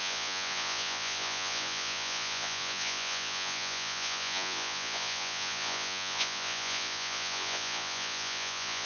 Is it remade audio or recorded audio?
remade